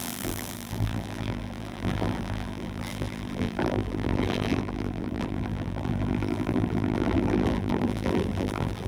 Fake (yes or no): yes